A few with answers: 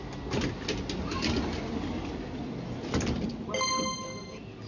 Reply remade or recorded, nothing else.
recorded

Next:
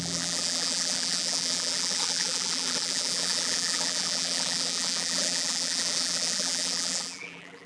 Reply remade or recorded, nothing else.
remade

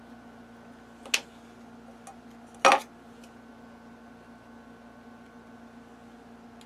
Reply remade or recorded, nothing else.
recorded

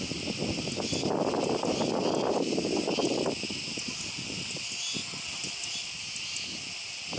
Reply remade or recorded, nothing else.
recorded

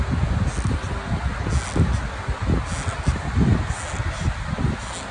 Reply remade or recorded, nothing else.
recorded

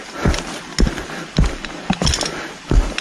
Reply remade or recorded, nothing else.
recorded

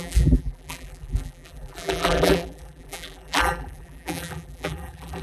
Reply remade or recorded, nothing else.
remade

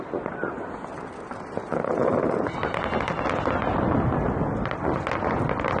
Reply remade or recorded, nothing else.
recorded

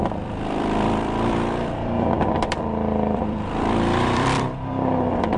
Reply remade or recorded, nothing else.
remade